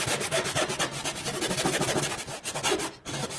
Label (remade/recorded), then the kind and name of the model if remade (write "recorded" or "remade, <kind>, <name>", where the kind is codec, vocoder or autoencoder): recorded